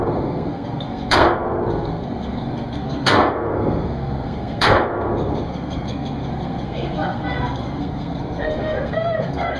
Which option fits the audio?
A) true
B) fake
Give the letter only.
B